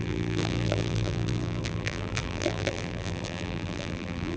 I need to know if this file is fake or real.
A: fake